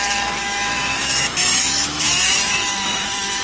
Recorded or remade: remade